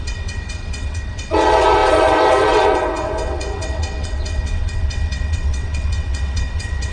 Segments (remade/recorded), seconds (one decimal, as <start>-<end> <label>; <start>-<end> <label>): 0.0-6.9 remade